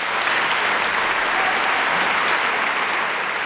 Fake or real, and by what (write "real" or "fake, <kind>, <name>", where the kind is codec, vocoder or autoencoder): real